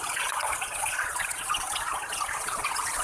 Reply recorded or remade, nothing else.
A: remade